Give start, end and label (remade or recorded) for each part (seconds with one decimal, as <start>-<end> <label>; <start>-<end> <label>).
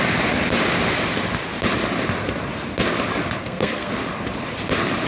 0.0-3.4 recorded; 3.4-3.9 remade; 3.9-5.1 recorded